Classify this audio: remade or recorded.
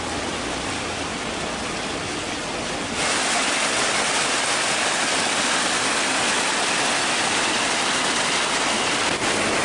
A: recorded